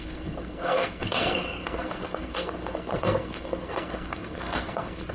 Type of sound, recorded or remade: remade